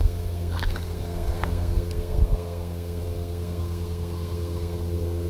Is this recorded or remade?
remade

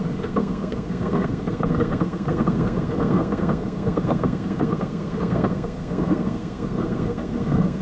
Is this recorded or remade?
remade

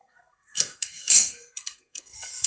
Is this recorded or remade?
remade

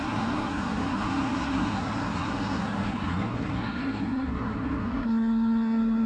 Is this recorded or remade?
remade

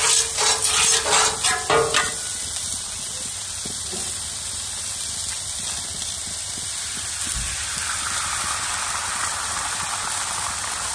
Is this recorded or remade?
recorded